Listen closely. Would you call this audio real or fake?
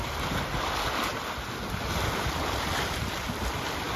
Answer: real